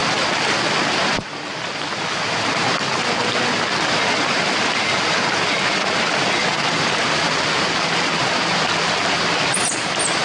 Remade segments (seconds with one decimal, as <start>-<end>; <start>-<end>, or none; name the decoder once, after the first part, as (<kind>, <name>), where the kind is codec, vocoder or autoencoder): none